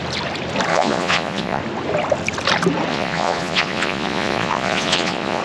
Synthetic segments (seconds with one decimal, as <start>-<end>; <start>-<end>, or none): 0.7-1.6; 2.9-5.4